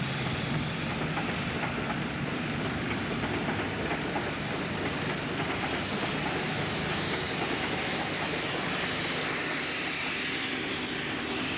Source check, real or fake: real